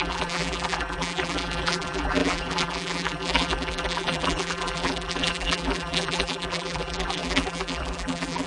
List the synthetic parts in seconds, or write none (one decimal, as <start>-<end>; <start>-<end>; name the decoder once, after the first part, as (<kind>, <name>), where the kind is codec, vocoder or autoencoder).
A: 0.0-8.5 (vocoder, BigVGAN v2)